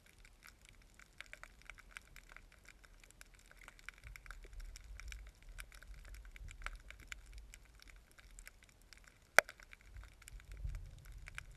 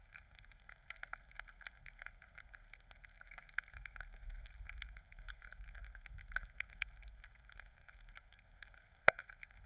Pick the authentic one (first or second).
first